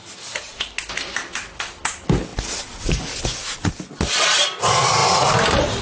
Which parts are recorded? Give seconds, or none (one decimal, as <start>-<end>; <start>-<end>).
0.0-5.8